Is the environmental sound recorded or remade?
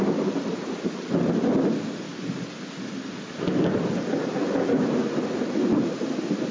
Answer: recorded